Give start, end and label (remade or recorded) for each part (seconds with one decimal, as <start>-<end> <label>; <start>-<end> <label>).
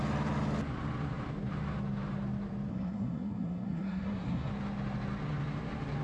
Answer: 0.0-2.7 recorded; 2.7-4.5 remade; 4.5-6.0 recorded